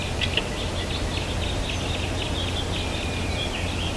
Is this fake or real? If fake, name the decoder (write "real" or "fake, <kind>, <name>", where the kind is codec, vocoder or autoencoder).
real